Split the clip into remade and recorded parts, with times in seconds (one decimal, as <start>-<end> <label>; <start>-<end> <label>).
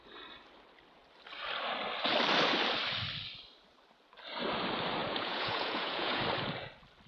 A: 0.0-5.0 recorded; 5.0-6.2 remade; 6.2-7.1 recorded